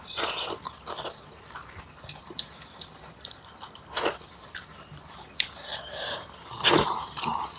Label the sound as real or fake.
fake